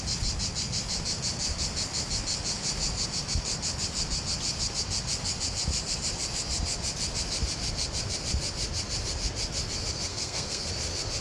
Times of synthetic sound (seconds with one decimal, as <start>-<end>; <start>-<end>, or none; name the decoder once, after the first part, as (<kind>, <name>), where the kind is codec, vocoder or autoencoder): 10.1-10.7 (codec, SNAC)